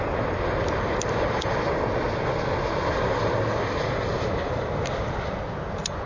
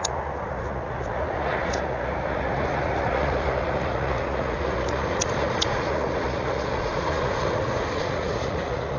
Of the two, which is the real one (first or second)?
first